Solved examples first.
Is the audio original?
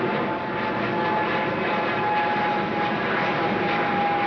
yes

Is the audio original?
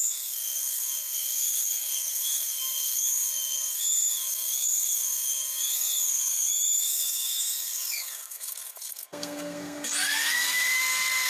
no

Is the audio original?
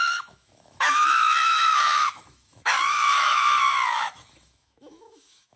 no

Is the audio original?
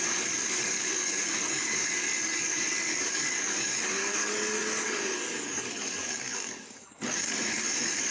no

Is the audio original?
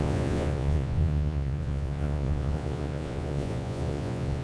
no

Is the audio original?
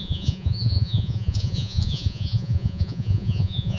no